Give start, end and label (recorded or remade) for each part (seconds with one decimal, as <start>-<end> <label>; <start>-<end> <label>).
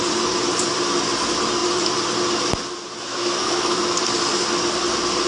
0.0-3.0 recorded; 3.0-3.8 remade; 3.8-5.3 recorded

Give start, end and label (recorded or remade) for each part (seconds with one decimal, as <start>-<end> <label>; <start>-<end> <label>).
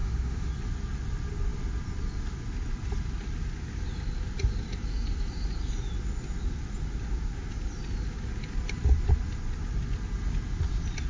0.0-0.5 remade; 0.5-11.1 recorded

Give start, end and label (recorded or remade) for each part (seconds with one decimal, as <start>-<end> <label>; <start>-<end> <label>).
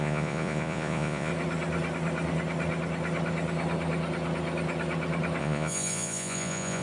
0.0-1.3 remade; 1.3-5.4 recorded; 5.4-6.8 remade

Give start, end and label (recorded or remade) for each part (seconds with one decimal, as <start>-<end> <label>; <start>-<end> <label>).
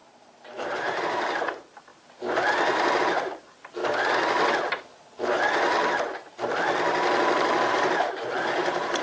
0.0-3.8 remade; 3.8-7.7 recorded; 7.7-9.0 remade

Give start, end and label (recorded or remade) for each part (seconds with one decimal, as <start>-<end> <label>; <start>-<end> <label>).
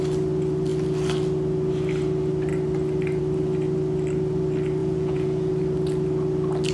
0.0-4.8 recorded; 4.8-5.5 remade; 5.5-6.7 recorded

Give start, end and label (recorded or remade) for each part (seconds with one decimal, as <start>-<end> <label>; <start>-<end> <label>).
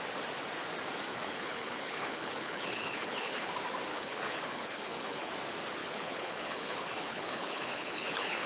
0.0-1.1 recorded; 1.1-3.5 remade; 3.5-3.9 recorded; 3.9-5.3 remade; 5.3-5.8 recorded; 5.8-8.5 remade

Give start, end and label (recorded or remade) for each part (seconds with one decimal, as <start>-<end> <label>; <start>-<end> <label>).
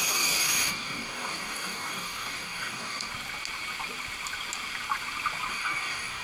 0.0-3.1 remade; 3.1-5.5 recorded; 5.5-6.2 remade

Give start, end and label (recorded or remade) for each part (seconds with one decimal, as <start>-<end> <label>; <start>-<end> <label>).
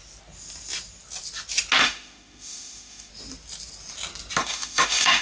0.0-1.8 recorded; 1.8-3.1 remade; 3.1-4.4 recorded; 4.4-5.2 remade